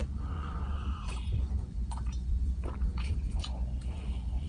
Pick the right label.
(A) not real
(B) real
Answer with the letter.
A